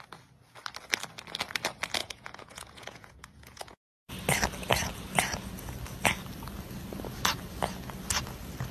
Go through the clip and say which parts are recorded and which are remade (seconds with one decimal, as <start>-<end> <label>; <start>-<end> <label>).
0.0-2.0 recorded; 2.0-4.1 remade; 4.1-8.7 recorded

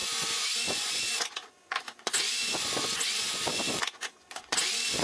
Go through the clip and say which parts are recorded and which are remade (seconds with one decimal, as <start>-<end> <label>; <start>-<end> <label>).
0.0-5.0 remade